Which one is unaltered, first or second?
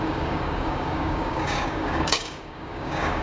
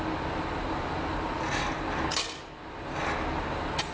second